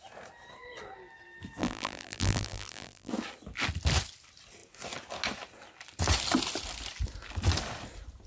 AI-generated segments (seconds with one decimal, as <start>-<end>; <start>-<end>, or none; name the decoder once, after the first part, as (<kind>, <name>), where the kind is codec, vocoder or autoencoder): 1.6-3.1 (vocoder, BigVGAN v2)